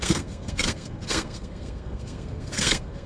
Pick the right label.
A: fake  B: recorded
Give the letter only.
A